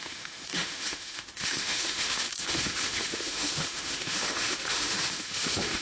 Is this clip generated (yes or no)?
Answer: yes